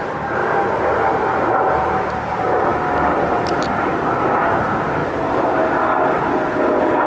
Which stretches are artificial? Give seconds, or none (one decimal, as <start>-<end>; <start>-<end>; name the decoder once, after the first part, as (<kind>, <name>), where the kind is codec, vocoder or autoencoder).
none